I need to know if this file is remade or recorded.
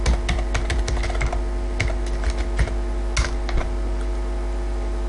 recorded